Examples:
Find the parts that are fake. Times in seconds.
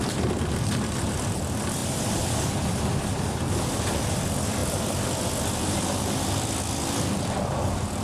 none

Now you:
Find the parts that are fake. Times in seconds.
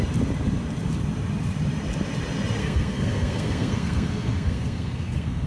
2.6-5.5 (codec, SNAC)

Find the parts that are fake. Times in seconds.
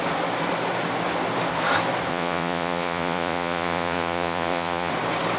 2.1-4.9 (vocoder, Vocos)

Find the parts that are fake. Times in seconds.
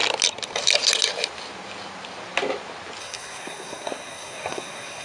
3.0-5.0 (codec, SNAC)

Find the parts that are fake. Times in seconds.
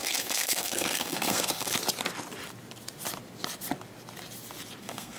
0.0-1.7 (codec, SNAC); 4.8-5.2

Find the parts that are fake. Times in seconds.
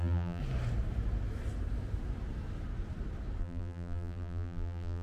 0.0-0.4 (vocoder, BigVGAN v2); 3.4-5.0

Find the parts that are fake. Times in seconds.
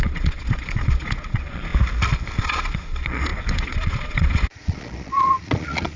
0.0-1.7 (vocoder, Vocos); 2.4-6.0